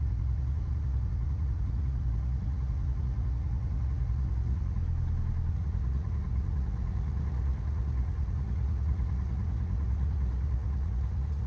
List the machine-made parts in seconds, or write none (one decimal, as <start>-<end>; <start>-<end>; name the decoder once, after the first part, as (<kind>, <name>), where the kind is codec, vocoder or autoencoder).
0.0-4.8 (vocoder, Vocos); 5.5-11.5